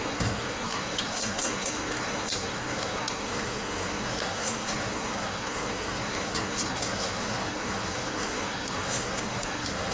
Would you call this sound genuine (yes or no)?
no